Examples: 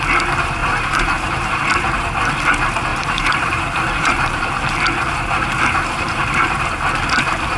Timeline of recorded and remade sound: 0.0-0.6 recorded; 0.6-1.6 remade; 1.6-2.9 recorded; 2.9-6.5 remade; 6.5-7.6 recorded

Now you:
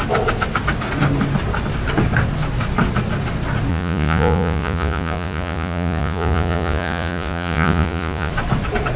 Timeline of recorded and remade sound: 0.0-3.7 recorded; 3.7-8.3 remade; 8.3-9.0 recorded

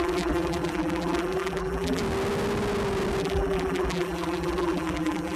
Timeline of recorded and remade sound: 0.0-2.0 remade; 2.0-3.2 recorded; 3.2-5.4 remade

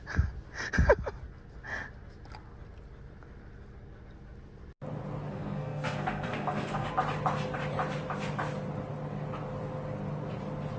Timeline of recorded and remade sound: 0.0-5.3 recorded; 5.3-6.9 remade; 6.9-10.8 recorded

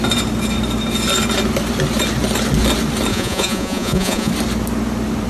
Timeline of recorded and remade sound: 0.0-3.1 recorded; 3.1-4.3 remade; 4.3-5.3 recorded

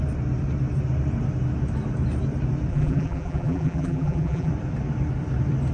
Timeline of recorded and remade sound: 0.0-2.7 recorded; 2.7-4.5 remade; 4.5-5.7 recorded

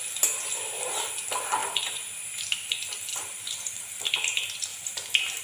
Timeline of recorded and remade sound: 0.0-1.6 recorded; 1.6-2.7 remade; 2.7-3.1 recorded; 3.1-4.1 remade; 4.1-4.7 recorded; 4.7-5.4 remade